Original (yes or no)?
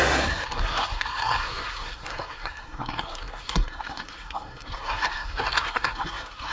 no